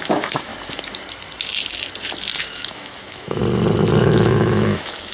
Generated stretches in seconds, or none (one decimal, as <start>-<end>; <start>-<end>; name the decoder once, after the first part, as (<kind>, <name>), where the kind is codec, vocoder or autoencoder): 0.0-0.5 (autoencoder, DAC-VAE); 2.4-3.4; 4.0-5.1